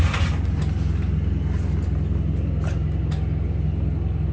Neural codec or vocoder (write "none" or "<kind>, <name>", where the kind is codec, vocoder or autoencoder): none